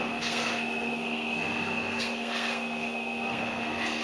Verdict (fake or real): fake